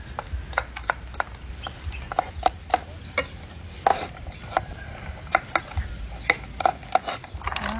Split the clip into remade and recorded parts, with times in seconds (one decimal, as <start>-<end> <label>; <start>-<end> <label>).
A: 0.0-0.6 recorded; 0.6-1.5 remade; 1.5-3.9 recorded; 3.9-5.4 remade; 5.4-7.8 recorded